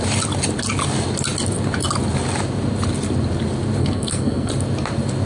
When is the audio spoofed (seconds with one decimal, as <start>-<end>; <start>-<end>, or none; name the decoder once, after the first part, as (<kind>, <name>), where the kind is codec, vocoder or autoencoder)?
3.8-4.5 (codec, SNAC)